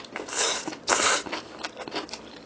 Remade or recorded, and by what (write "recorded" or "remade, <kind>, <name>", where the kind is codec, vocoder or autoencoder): remade, vocoder, BigVGAN v2